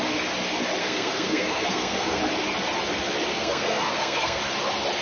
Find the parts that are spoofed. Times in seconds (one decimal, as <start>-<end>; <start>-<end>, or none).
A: 0.8-2.2; 3.3-4.4